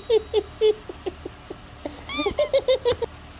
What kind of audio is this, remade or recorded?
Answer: recorded